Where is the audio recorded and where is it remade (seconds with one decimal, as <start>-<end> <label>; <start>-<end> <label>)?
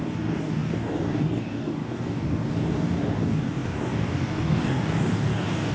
0.0-5.7 remade